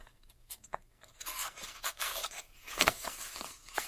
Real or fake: fake